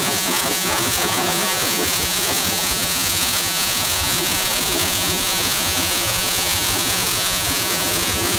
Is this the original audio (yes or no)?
no